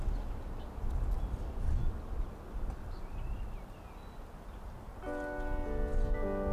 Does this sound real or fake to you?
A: real